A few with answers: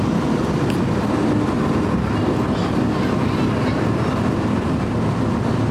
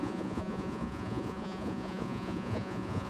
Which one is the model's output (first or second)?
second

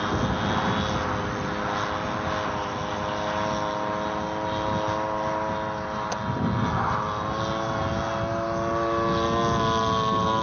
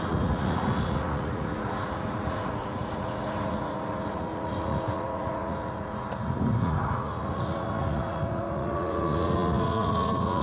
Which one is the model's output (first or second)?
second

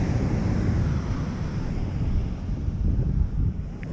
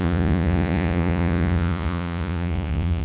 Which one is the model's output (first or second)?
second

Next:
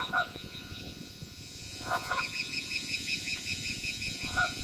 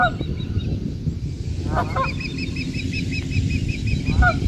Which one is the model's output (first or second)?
first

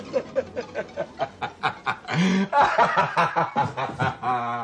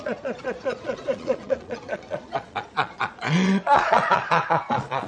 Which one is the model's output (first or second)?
second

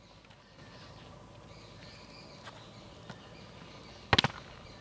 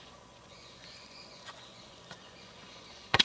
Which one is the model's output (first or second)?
second